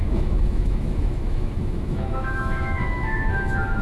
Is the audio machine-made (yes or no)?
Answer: yes